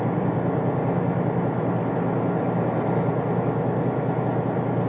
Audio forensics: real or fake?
real